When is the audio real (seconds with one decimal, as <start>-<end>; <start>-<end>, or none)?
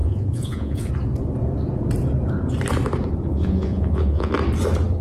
0.9-3.3; 4.3-5.0